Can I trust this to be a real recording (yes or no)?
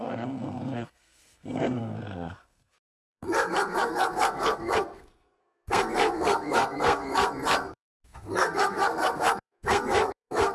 no